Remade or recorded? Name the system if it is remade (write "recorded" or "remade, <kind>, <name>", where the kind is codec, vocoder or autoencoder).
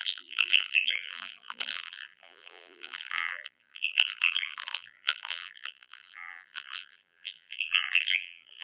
remade, vocoder, BigVGAN v2